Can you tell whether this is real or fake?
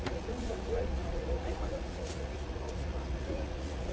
fake